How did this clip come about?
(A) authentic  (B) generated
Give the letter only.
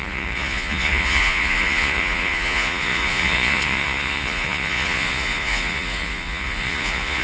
B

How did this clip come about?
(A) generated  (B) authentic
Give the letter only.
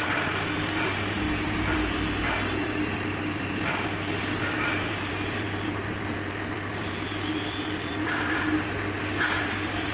A